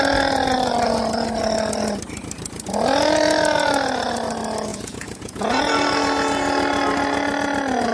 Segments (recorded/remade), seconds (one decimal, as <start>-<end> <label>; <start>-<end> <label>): 0.0-4.7 recorded; 4.7-5.5 remade; 5.5-7.9 recorded